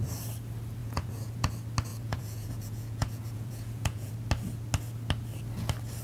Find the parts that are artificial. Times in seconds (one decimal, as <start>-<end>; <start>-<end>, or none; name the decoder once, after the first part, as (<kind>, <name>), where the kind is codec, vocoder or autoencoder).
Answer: 0.8-1.5 (vocoder, Vocos); 1.9-4.1